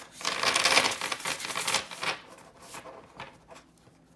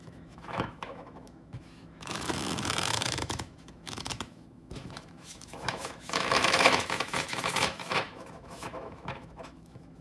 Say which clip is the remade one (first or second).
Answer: second